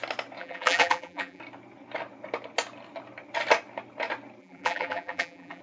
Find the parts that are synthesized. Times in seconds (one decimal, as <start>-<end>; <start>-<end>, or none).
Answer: 0.4-1.4; 4.4-5.6